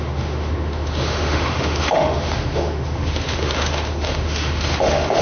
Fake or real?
fake